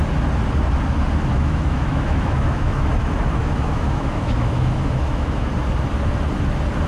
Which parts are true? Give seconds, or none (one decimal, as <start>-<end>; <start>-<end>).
0.0-1.3; 2.9-3.4; 5.5-6.9